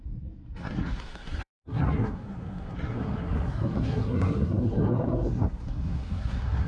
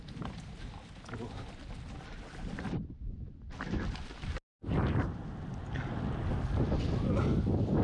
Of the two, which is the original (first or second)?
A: second